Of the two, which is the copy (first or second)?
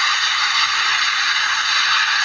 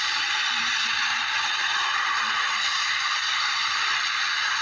second